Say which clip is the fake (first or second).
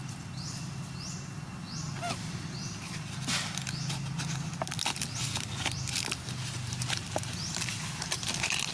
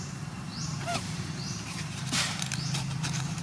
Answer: second